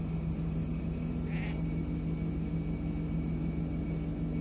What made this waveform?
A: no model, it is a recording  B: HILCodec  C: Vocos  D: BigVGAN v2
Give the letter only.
A